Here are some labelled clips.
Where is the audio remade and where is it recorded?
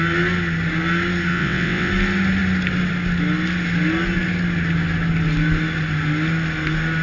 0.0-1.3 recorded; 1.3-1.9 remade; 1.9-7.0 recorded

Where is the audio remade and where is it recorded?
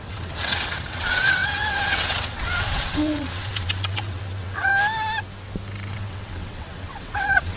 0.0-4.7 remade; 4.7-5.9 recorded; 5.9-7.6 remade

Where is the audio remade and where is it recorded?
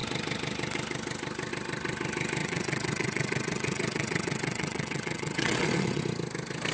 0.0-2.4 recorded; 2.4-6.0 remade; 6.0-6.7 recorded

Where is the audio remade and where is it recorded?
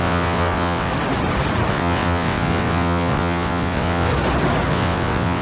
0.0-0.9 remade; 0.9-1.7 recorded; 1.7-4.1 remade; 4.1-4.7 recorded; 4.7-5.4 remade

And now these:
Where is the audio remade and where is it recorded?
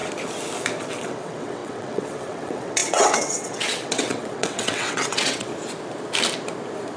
0.0-0.9 recorded; 0.9-5.5 remade; 5.5-7.0 recorded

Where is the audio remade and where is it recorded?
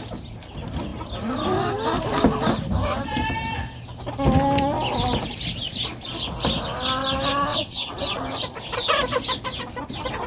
0.0-7.5 recorded; 7.5-8.2 remade; 8.2-10.3 recorded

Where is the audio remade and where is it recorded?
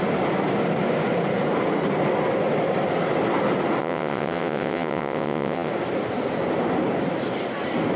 0.0-3.8 recorded; 3.8-5.7 remade; 5.7-8.0 recorded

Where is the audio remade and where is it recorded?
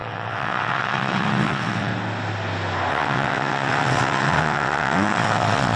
0.0-1.9 remade; 1.9-2.9 recorded; 2.9-5.8 remade